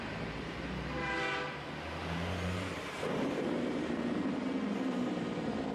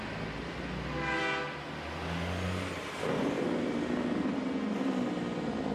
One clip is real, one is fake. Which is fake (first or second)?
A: first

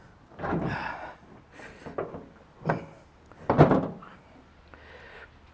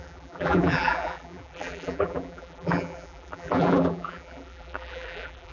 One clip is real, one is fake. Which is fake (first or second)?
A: second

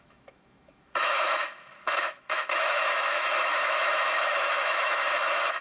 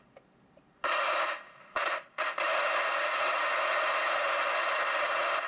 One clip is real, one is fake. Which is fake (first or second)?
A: first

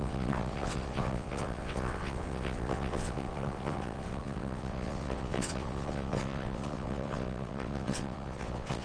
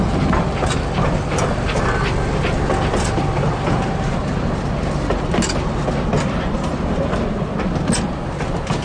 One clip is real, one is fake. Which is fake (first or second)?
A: first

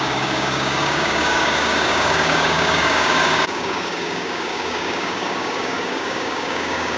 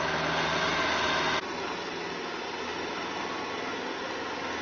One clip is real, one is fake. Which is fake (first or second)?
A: first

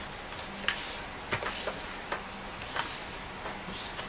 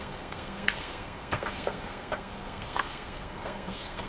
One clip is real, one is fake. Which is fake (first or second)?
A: second